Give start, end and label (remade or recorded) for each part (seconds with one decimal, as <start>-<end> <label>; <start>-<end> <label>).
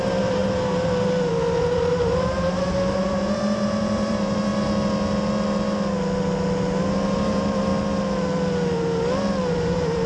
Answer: 0.0-4.5 remade; 4.5-6.9 recorded; 6.9-7.7 remade; 7.7-9.5 recorded; 9.5-10.1 remade